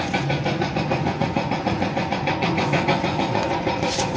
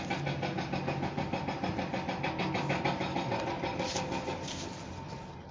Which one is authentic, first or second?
second